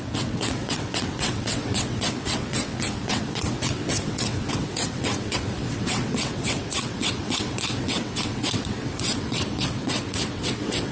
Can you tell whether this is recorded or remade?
remade